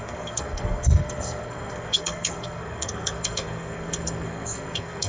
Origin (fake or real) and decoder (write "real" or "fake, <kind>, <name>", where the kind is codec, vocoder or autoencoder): fake, codec, SNAC